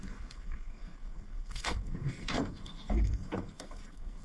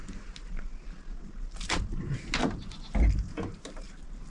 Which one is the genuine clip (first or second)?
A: second